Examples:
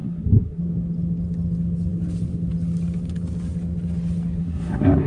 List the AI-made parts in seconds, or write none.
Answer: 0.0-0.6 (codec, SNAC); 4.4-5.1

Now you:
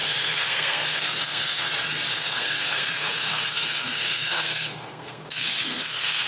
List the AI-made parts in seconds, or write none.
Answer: 0.0-1.7 (codec, SNAC); 2.1-6.3

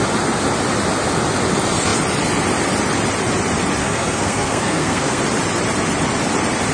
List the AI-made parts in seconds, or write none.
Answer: 3.8-5.2 (codec, SNAC)

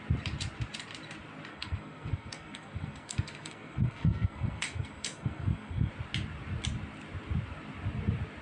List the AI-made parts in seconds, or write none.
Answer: 1.5-5.9 (codec, SNAC)